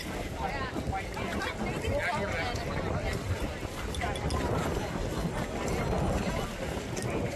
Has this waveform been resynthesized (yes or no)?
no